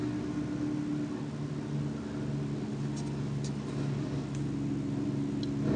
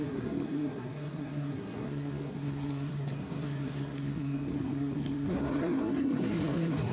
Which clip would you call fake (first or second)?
second